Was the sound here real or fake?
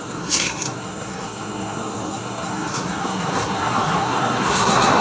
fake